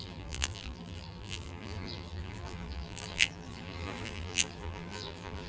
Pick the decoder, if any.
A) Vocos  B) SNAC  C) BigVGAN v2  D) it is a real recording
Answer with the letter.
C